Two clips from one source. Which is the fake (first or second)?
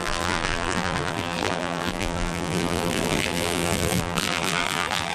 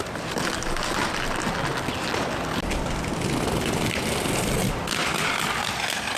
first